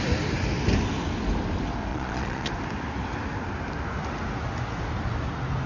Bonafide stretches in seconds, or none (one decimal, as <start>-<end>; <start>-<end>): 0.0-1.9; 2.5-5.7